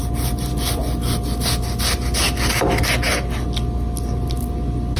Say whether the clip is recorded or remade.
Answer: recorded